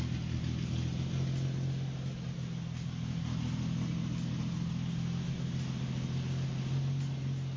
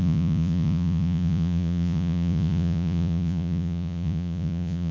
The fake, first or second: second